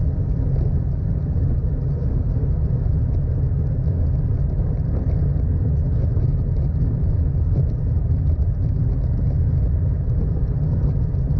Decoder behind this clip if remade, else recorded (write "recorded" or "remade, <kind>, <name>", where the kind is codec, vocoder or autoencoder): recorded